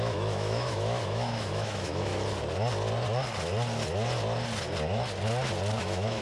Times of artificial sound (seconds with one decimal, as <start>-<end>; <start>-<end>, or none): 0.0-2.1; 5.8-6.2